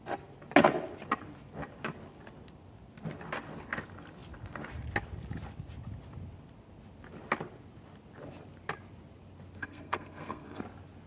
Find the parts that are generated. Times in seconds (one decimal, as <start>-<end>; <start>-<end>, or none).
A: 9.6-10.6

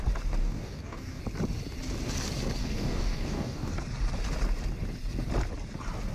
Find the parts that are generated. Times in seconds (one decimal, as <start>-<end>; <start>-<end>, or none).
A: 0.4-1.2; 2.6-3.7

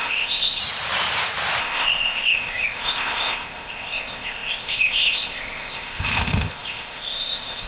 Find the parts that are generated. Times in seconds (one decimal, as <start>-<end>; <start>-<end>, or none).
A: 0.0-0.6; 1.6-7.7

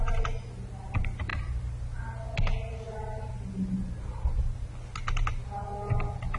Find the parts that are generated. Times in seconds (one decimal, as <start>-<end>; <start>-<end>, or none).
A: none

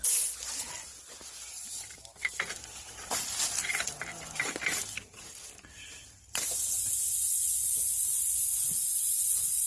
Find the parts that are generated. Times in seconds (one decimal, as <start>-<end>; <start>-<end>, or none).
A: 0.9-1.9; 8.6-9.7

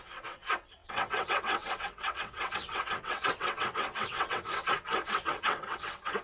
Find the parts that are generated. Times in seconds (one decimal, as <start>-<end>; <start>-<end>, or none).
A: 0.0-6.2